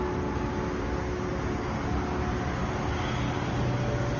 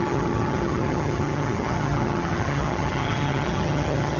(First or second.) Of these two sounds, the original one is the first